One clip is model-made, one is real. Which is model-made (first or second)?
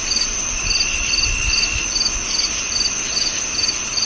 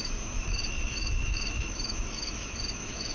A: second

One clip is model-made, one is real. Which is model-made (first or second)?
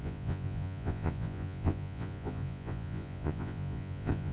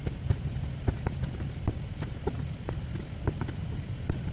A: first